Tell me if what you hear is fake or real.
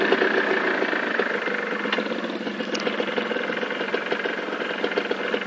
real